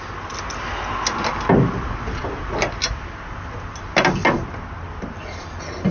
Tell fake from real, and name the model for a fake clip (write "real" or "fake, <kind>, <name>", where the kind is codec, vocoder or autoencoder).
real